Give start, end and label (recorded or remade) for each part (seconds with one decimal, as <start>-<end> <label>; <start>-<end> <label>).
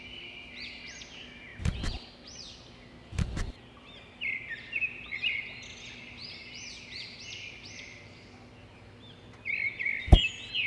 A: 0.0-10.7 recorded